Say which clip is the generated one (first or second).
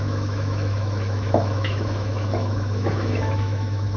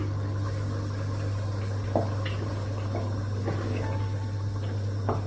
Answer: first